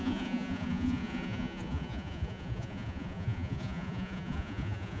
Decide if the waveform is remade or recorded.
remade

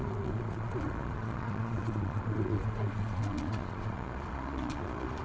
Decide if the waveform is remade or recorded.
remade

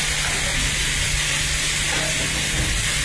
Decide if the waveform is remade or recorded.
recorded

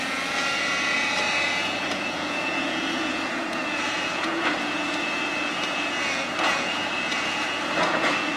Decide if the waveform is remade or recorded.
remade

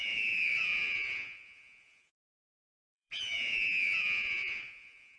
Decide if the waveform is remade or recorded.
remade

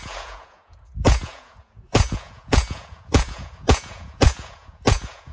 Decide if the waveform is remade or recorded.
remade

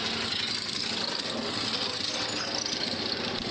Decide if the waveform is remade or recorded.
recorded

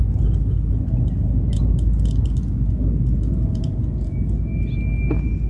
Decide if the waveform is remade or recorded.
recorded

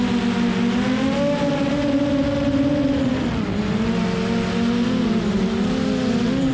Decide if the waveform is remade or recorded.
recorded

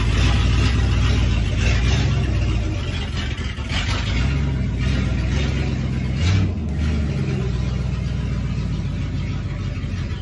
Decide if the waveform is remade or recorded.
recorded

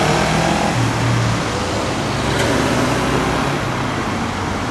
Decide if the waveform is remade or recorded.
recorded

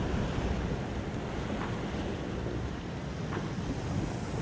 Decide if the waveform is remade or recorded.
recorded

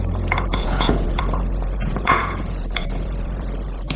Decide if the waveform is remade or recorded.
remade